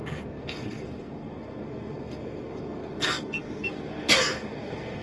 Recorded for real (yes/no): no